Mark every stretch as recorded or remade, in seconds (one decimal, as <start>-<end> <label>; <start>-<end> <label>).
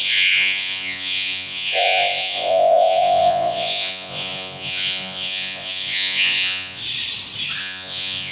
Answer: 0.0-6.8 remade; 6.8-7.6 recorded; 7.6-8.3 remade